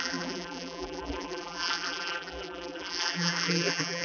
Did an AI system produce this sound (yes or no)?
yes